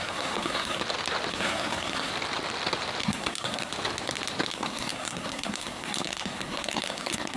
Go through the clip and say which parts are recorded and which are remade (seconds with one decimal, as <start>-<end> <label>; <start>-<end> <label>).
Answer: 0.0-0.8 remade; 0.8-1.3 recorded; 1.3-2.1 remade; 2.1-3.0 recorded; 3.0-3.7 remade; 3.7-4.5 recorded; 4.5-7.4 remade